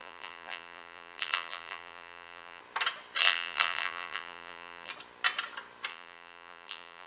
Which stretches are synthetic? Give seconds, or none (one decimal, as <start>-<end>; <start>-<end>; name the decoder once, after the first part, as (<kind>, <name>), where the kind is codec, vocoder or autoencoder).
0.0-2.6 (vocoder, BigVGAN v2); 3.2-4.9; 5.9-7.1

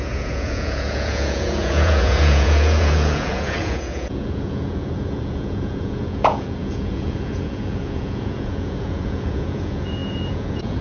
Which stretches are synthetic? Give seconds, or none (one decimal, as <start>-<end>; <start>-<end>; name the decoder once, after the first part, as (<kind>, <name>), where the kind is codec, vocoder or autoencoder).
0.0-10.8 (vocoder, Vocos)

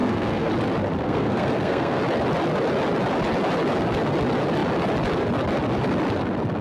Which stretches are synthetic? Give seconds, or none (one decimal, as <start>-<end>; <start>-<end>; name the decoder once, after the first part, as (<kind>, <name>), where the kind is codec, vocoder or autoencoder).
0.0-0.5 (codec, SNAC); 1.0-2.0

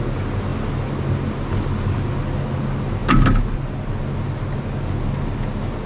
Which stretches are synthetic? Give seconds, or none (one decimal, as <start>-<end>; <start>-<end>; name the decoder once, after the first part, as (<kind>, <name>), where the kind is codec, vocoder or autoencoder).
none